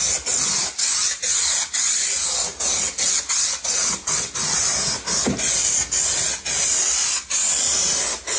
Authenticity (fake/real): real